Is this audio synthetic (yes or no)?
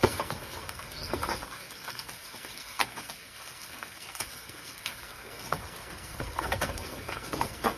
yes